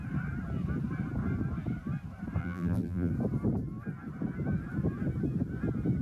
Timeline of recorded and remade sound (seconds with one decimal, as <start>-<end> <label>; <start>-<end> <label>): 0.0-2.4 recorded; 2.4-3.1 remade; 3.1-6.0 recorded